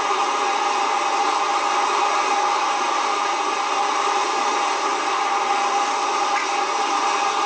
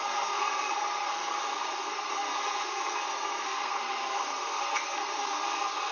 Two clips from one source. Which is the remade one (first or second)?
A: second